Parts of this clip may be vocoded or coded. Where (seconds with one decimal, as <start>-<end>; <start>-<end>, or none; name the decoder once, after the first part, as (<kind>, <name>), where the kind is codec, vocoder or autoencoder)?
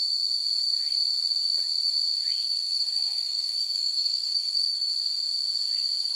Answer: 2.4-4.9 (codec, SNAC)